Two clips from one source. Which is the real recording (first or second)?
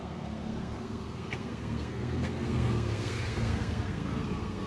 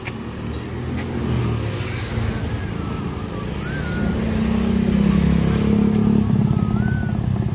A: second